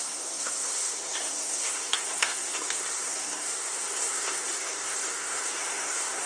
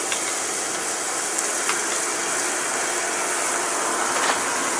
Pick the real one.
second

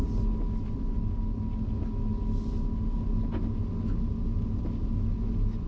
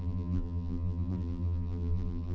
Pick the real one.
first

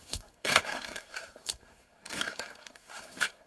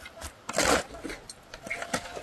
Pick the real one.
second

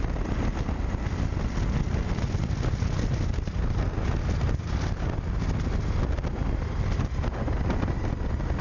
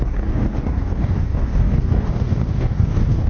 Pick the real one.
first